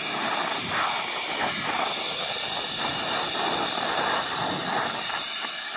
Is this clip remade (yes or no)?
no